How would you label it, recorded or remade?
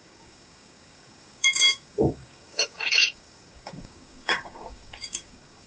remade